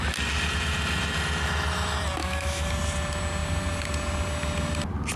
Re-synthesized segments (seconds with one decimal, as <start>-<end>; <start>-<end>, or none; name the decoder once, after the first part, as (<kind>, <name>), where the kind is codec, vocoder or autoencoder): 2.2-2.7 (autoencoder, DAC-VAE)